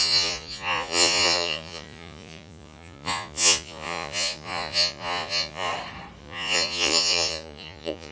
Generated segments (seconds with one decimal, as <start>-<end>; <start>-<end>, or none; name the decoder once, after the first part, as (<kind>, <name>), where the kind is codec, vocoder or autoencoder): 0.0-5.7 (vocoder, Vocos); 6.2-8.1